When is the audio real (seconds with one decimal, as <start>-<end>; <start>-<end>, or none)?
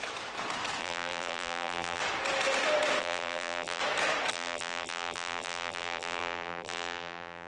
0.0-0.8; 2.0-3.0; 3.8-4.3